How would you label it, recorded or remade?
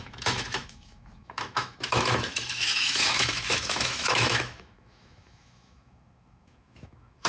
remade